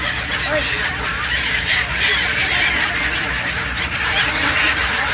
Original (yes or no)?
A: yes